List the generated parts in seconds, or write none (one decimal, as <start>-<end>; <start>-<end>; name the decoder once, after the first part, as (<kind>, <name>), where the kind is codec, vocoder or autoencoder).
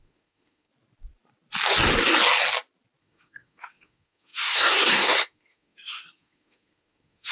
0.0-0.7 (codec, SNAC); 3.0-7.3